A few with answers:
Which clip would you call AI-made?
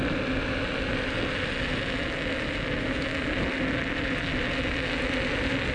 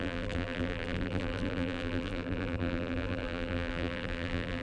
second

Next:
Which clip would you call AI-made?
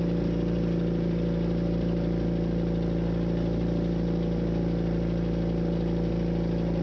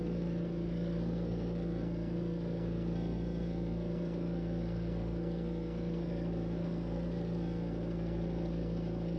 second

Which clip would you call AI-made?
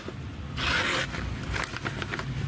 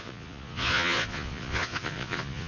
second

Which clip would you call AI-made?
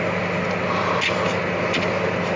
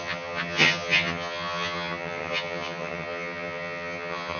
second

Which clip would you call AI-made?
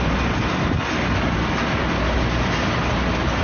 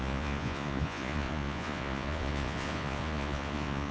second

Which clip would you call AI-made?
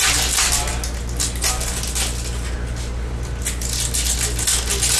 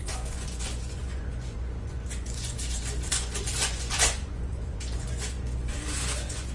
second